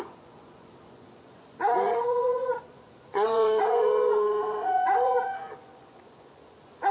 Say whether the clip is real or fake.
fake